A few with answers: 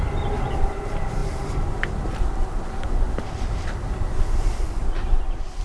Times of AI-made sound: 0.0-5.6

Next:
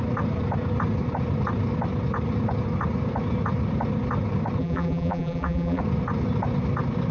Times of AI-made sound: 4.6-5.8

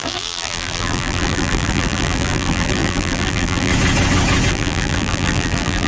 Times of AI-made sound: 0.0-3.7; 4.5-5.9

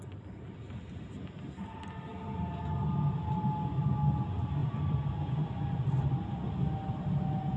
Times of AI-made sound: 4.6-6.0

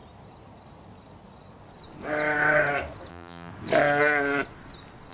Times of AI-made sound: 3.1-3.5

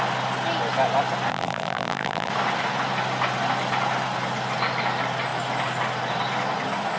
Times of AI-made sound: 1.3-2.3